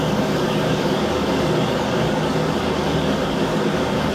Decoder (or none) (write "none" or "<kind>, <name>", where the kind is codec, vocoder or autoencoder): codec, DAC